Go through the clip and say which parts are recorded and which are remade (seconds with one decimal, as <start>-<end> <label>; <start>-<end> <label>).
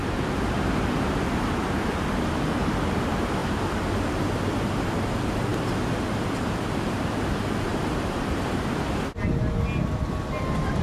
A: 0.0-2.1 remade; 2.1-3.4 recorded; 3.4-4.2 remade; 4.2-7.7 recorded; 7.7-8.4 remade; 8.4-10.8 recorded